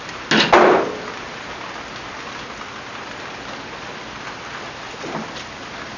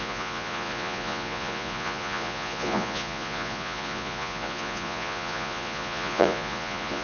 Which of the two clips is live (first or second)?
first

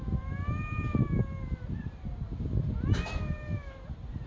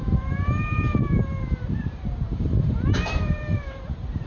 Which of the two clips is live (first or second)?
first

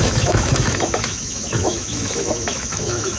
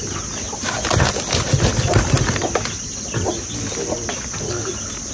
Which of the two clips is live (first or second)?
second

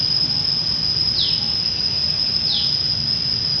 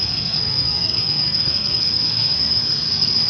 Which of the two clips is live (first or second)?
first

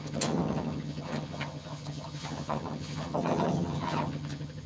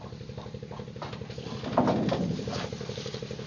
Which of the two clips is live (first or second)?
second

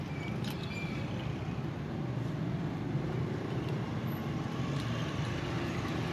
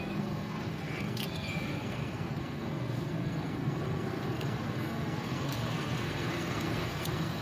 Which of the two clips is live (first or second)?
first